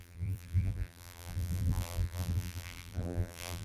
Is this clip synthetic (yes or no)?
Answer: yes